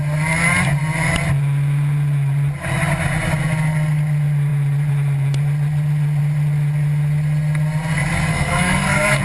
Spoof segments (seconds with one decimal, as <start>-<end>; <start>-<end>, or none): 8.3-9.2